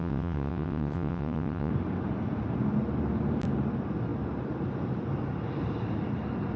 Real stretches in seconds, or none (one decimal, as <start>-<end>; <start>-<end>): 1.7-6.6